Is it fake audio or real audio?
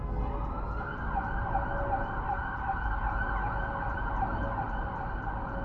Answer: real